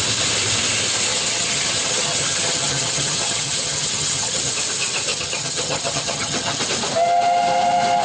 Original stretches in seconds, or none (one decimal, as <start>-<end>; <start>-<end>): 0.0-1.1; 4.5-5.1; 6.6-8.0